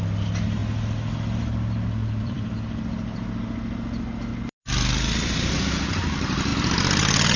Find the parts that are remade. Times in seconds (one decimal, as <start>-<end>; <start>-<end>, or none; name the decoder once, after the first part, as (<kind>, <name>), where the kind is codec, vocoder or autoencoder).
2.0-2.5 (vocoder, BigVGAN v2); 4.3-5.5